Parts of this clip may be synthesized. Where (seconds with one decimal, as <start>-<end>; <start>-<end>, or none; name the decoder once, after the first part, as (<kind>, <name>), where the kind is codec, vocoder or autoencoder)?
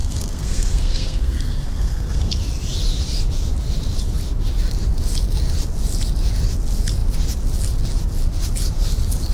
0.0-2.3 (codec, SNAC)